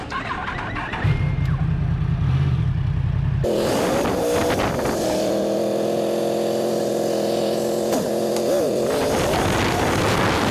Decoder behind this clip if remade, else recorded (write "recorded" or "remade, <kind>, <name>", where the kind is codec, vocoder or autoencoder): recorded